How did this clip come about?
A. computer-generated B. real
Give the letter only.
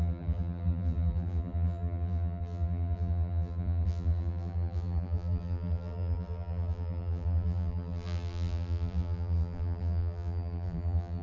A